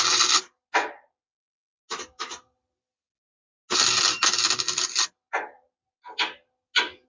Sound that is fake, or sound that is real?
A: real